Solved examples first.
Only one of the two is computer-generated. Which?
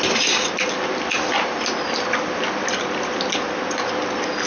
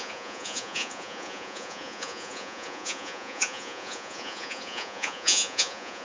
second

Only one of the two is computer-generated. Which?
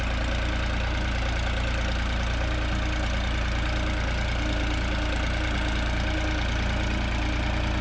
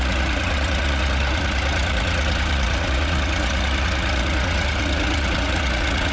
second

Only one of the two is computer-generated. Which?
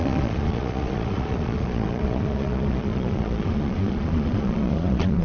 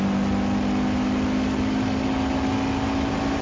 first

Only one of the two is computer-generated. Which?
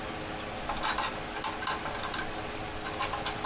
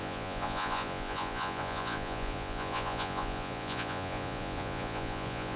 second